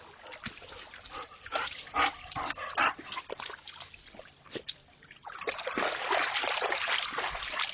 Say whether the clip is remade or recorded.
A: recorded